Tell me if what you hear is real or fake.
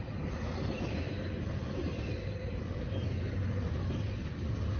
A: real